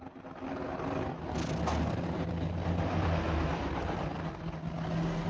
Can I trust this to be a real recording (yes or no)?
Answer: yes